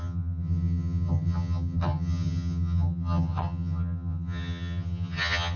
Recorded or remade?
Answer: remade